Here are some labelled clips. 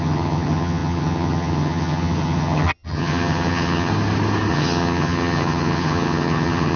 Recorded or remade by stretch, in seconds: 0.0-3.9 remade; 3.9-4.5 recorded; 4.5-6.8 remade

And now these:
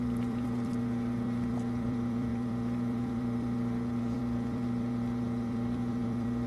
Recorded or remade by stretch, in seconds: 0.0-6.5 remade

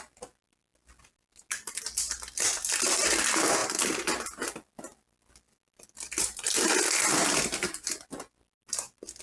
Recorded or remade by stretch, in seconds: 0.0-9.2 recorded

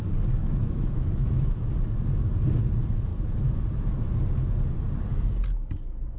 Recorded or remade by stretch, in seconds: 0.0-0.4 recorded; 0.4-1.7 remade; 1.7-6.2 recorded